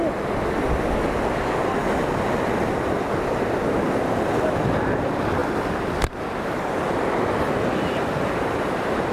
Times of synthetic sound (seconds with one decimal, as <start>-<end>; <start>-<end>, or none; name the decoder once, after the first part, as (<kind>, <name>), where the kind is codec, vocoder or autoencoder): 5.4-6.1 (vocoder, BigVGAN v2)